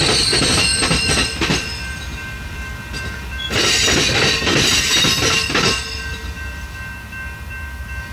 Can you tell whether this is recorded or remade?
recorded